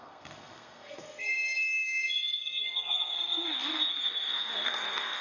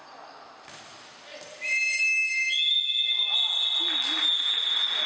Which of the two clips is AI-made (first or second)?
first